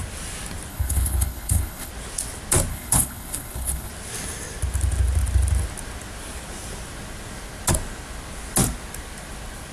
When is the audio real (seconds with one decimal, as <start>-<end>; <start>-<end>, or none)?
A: 0.0-0.7; 1.9-2.7; 3.9-9.7